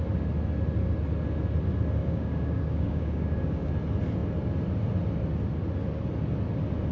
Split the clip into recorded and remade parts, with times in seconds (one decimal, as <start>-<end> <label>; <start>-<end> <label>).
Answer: 0.0-2.0 recorded; 2.0-3.7 remade; 3.7-6.9 recorded